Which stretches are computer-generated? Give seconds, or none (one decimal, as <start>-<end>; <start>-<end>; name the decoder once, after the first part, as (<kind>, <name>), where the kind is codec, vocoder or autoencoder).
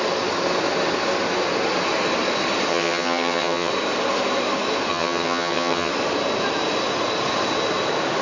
2.7-3.7 (vocoder, HiFi-GAN); 4.9-5.9